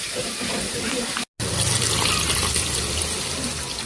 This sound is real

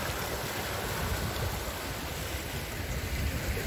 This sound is real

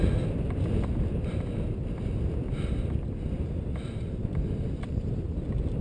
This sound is real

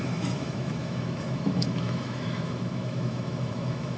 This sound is fake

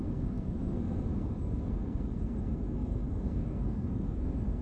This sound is fake